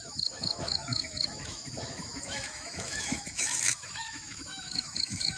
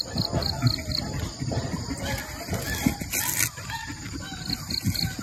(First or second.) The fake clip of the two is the first